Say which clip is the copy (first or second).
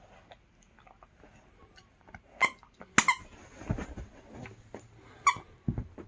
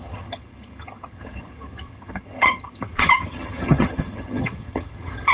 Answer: second